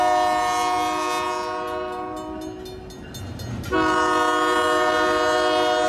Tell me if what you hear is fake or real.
real